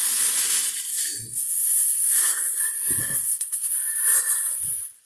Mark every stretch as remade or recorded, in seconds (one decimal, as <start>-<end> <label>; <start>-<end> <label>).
0.0-0.9 recorded; 0.9-2.6 remade; 2.6-3.0 recorded; 3.0-3.7 remade; 3.7-5.1 recorded